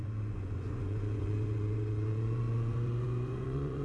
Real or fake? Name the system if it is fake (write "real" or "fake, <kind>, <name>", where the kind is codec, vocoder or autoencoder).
fake, vocoder, Vocos